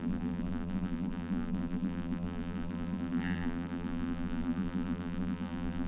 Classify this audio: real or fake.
fake